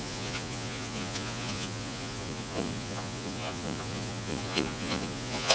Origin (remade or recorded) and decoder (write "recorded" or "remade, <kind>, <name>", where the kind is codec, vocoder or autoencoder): remade, vocoder, Vocos